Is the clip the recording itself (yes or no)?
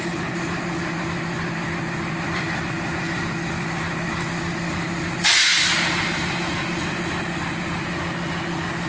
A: yes